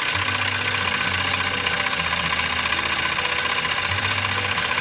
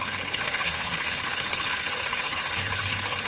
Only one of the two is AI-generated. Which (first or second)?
second